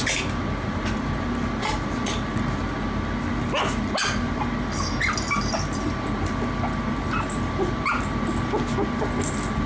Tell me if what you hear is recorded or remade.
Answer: recorded